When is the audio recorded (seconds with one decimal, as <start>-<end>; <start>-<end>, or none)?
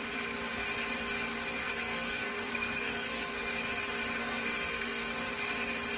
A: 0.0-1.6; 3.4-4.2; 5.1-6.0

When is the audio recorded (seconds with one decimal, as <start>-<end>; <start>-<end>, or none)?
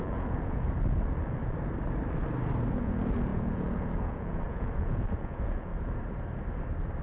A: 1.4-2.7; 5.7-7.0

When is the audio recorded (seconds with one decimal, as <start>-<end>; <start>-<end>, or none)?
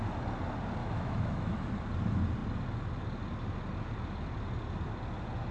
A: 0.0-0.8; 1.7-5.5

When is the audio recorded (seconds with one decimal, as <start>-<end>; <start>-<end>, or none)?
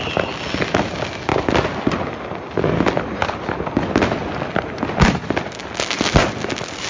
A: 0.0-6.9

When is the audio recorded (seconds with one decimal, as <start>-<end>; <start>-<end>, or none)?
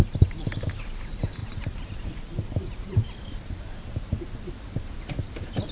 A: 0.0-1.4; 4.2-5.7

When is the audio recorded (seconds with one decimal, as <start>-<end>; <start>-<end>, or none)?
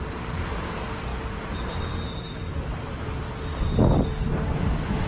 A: 0.0-5.1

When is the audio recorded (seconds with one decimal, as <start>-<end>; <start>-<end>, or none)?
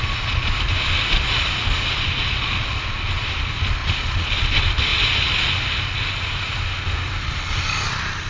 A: 0.0-3.8; 4.3-8.3